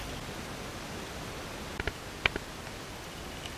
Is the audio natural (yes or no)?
yes